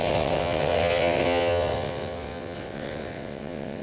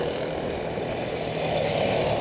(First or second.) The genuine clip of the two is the second